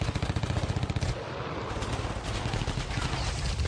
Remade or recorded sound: recorded